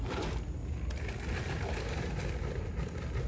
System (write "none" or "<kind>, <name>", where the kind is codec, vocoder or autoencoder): vocoder, BigVGAN v2